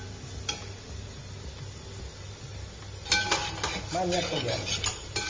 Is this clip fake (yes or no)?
no